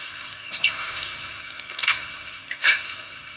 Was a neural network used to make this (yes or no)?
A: yes